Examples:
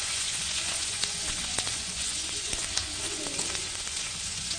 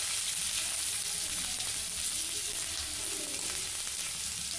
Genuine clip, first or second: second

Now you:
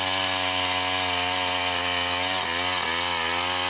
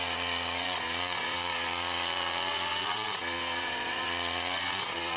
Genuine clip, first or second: first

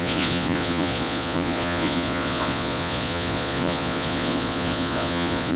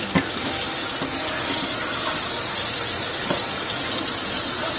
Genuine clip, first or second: second